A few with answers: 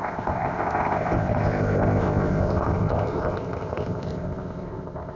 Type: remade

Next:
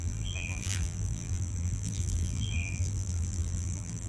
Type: remade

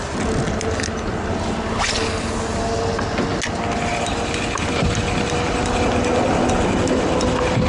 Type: recorded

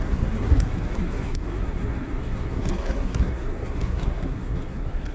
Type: remade